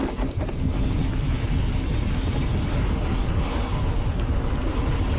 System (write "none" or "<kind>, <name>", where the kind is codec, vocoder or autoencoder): none